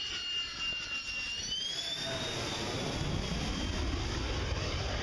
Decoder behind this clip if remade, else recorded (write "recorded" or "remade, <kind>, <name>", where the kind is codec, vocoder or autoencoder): recorded